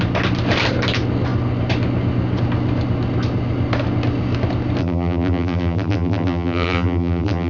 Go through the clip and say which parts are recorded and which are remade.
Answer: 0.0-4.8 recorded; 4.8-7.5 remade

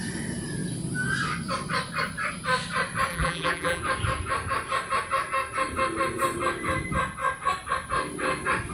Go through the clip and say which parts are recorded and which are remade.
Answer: 0.0-3.1 recorded; 3.1-3.8 remade; 3.8-8.7 recorded

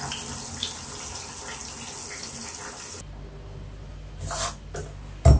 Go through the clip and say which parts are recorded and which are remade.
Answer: 0.0-5.4 recorded

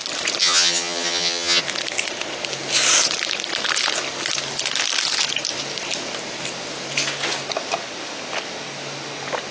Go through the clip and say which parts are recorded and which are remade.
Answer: 0.0-0.4 recorded; 0.4-1.6 remade; 1.6-9.5 recorded

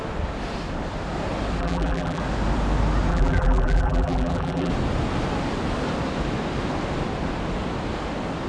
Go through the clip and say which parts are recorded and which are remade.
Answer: 0.0-1.6 recorded; 1.6-2.2 remade; 2.2-3.1 recorded; 3.1-4.7 remade; 4.7-8.5 recorded

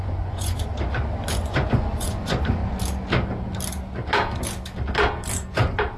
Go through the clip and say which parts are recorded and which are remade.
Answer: 0.0-0.7 remade; 0.7-1.3 recorded; 1.3-2.6 remade; 2.6-6.0 recorded

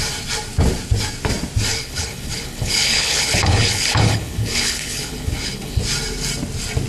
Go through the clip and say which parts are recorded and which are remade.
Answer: 0.0-1.7 recorded; 1.7-5.8 remade; 5.8-6.9 recorded

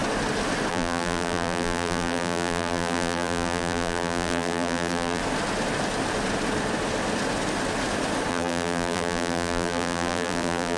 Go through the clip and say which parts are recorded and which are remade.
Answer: 0.0-0.7 recorded; 0.7-5.2 remade; 5.2-8.3 recorded; 8.3-10.8 remade